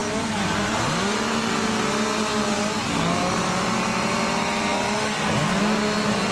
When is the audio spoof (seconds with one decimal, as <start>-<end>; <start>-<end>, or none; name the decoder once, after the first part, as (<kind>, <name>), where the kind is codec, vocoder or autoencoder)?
none